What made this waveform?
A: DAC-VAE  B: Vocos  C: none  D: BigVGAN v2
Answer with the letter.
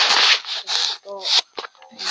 C